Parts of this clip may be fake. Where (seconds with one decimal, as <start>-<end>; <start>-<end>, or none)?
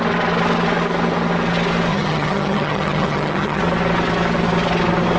1.9-3.6